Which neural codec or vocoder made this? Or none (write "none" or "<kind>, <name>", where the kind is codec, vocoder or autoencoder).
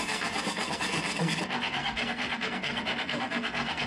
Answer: codec, SNAC